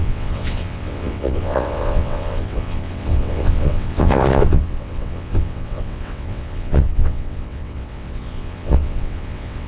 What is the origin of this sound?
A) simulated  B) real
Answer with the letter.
A